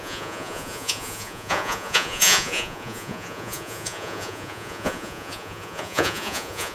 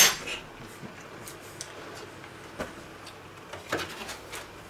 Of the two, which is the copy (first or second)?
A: first